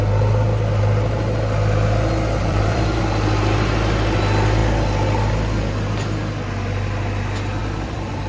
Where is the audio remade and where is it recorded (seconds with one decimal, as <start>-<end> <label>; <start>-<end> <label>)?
0.0-2.4 recorded; 2.4-3.0 remade; 3.0-7.6 recorded; 7.6-8.3 remade